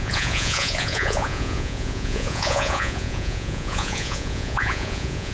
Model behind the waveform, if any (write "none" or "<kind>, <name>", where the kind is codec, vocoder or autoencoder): vocoder, Vocos